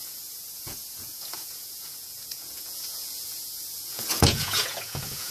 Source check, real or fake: fake